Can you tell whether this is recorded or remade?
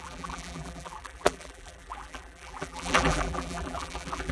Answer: remade